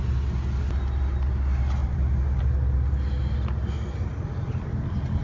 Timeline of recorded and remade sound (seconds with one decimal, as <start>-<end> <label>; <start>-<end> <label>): 0.0-1.8 recorded; 1.8-2.4 remade; 2.4-5.2 recorded